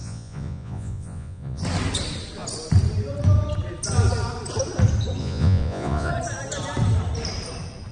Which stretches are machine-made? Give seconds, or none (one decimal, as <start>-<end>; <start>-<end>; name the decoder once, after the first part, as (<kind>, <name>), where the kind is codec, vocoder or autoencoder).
0.0-1.6 (vocoder, Vocos); 5.2-6.1